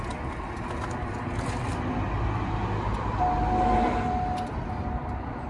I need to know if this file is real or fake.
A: real